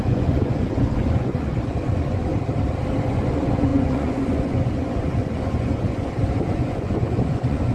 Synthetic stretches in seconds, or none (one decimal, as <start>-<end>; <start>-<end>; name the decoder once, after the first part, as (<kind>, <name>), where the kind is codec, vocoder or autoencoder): 0.0-2.3 (vocoder, Vocos); 3.0-7.7